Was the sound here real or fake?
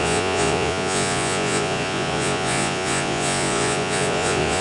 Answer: fake